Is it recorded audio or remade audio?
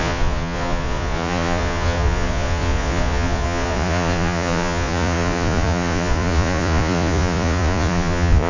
remade